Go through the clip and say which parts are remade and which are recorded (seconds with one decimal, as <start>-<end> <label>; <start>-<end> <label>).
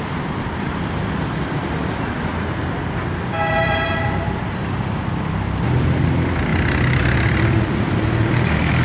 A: 0.0-2.3 remade; 2.3-3.5 recorded; 3.5-8.8 remade